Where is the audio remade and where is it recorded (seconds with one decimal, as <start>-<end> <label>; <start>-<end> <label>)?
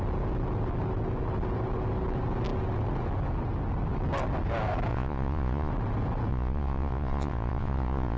0.0-4.9 recorded; 4.9-5.7 remade; 5.7-6.3 recorded; 6.3-8.2 remade